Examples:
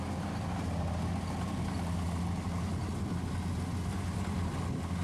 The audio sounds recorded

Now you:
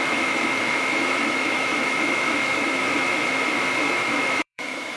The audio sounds remade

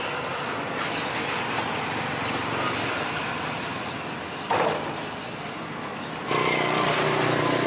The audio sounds recorded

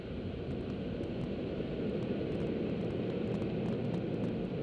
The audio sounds recorded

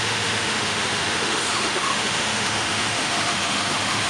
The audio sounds remade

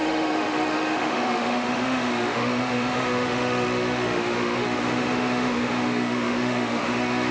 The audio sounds remade